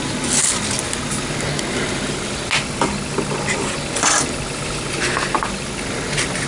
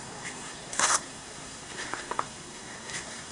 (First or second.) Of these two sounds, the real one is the first